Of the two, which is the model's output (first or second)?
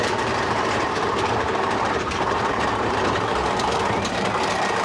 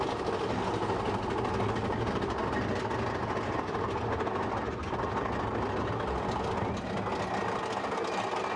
first